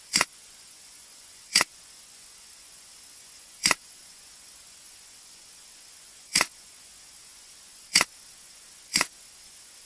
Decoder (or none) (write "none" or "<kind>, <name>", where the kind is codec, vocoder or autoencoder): vocoder, Vocos